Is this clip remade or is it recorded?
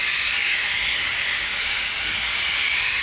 remade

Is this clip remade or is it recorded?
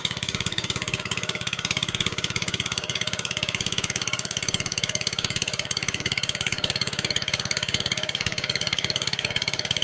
remade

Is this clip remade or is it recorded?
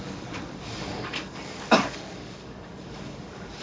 remade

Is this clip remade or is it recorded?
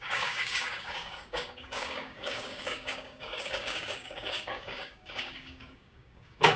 remade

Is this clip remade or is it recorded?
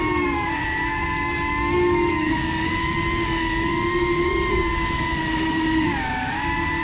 remade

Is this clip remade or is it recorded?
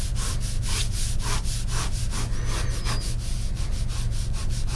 recorded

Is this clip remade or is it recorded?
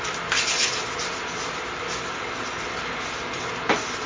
recorded